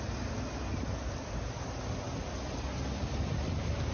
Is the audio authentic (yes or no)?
yes